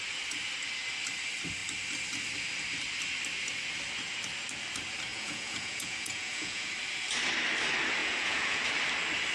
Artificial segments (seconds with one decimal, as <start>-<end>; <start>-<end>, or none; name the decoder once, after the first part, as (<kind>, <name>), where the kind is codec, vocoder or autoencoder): 5.1-6.7 (vocoder, Vocos); 8.0-8.6